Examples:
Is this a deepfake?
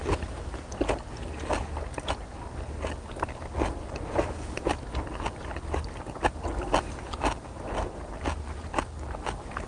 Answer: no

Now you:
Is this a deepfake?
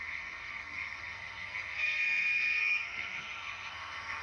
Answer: yes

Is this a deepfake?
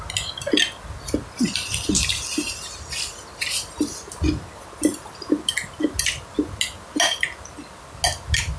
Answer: no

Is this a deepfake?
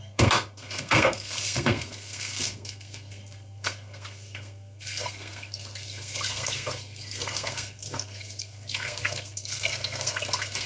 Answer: yes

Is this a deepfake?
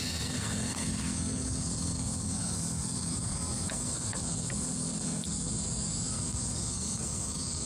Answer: yes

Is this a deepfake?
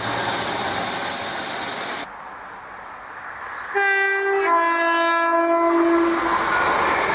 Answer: no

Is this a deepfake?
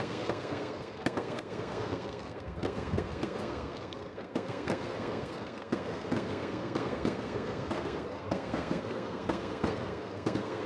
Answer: yes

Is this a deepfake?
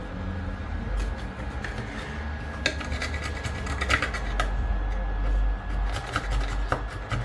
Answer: no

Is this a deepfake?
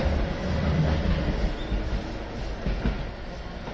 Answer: no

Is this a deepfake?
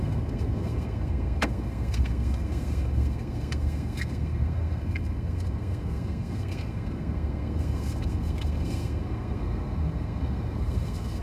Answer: yes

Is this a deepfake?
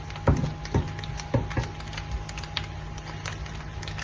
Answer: no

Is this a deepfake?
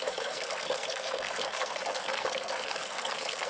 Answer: yes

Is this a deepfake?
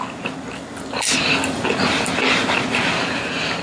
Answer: no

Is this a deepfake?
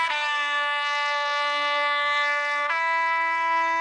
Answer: yes